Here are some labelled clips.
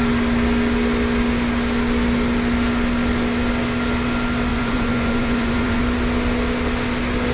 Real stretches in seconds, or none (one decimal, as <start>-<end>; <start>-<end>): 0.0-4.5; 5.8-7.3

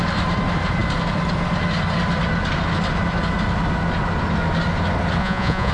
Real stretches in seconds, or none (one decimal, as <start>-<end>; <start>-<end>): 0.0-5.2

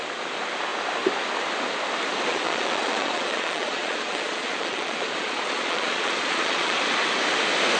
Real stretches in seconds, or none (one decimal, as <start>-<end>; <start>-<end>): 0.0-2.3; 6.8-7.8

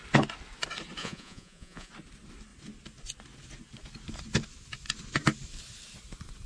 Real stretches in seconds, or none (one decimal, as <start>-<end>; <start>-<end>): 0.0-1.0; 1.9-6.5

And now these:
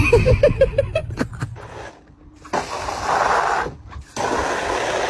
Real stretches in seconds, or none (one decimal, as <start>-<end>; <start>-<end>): 0.0-5.1

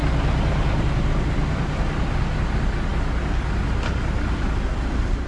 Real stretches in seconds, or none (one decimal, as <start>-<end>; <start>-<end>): 0.0-5.3

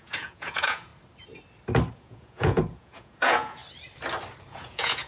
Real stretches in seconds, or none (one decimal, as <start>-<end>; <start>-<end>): 0.9-1.9; 3.6-4.5